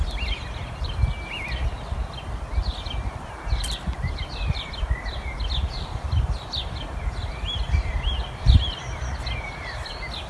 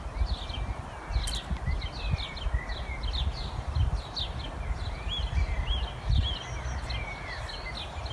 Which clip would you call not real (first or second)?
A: first